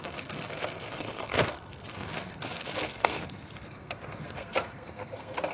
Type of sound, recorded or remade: remade